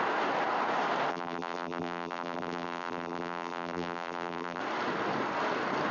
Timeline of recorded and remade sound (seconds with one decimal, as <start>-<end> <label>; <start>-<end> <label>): 0.0-1.1 recorded; 1.1-4.6 remade; 4.6-5.9 recorded